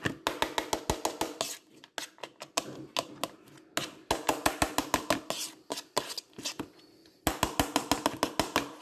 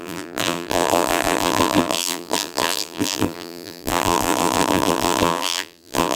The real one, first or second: first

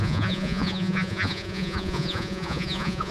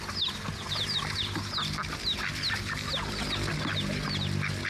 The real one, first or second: second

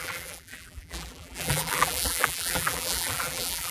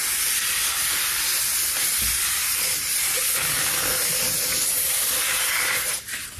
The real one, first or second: second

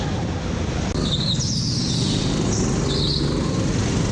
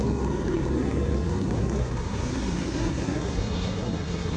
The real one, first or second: first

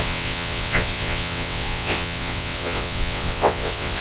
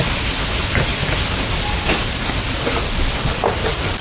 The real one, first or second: second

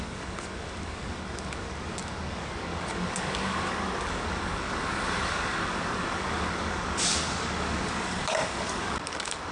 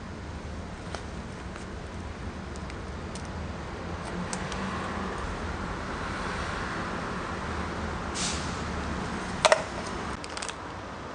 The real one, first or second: second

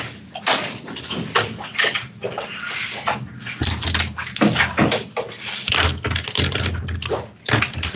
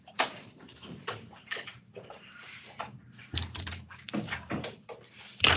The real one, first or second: first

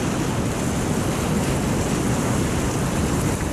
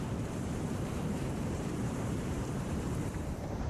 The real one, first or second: first